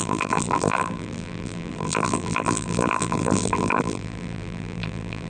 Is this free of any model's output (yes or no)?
no